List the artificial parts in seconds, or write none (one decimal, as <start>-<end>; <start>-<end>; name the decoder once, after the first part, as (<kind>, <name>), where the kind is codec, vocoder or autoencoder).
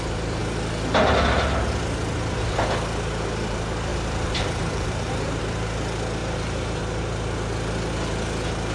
3.9-5.4 (vocoder, BigVGAN v2); 6.2-6.8